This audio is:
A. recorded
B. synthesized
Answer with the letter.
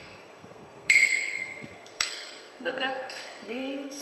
B